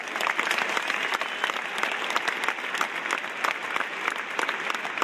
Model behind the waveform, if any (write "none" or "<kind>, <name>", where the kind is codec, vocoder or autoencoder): none